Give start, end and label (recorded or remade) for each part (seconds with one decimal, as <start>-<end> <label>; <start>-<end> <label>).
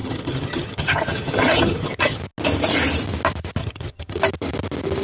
0.0-2.2 remade; 2.2-3.6 recorded; 3.6-4.2 remade; 4.2-5.0 recorded